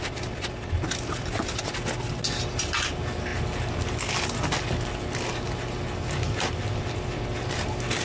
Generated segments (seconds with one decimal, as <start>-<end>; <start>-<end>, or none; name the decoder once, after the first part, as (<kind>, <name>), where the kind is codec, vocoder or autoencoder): none